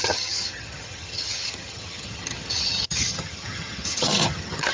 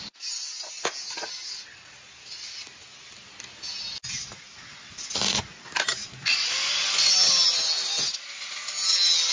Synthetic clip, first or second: first